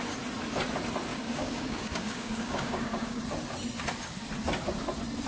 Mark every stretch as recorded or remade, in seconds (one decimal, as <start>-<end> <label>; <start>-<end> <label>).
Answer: 0.0-1.1 recorded; 1.1-3.2 remade; 3.2-5.3 recorded